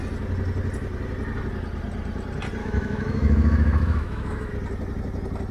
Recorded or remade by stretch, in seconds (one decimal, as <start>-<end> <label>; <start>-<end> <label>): 0.0-2.6 recorded; 2.6-4.5 remade; 4.5-5.5 recorded